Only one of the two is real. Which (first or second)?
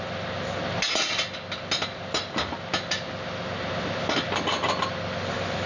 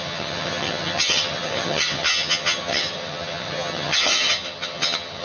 first